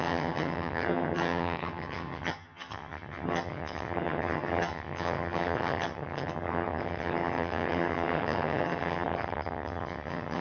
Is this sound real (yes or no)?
no